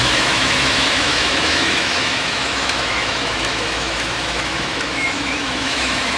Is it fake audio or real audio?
fake